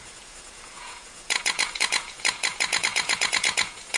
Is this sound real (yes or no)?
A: no